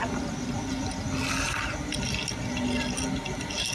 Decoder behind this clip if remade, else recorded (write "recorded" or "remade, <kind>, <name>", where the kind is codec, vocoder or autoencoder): recorded